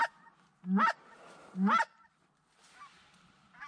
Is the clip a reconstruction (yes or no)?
no